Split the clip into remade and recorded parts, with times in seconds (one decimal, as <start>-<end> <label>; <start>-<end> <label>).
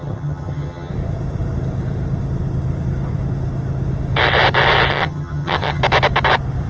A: 0.0-0.9 remade; 0.9-4.9 recorded; 4.9-5.8 remade; 5.8-6.7 recorded